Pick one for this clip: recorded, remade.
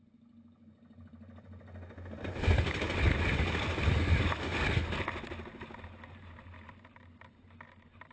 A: recorded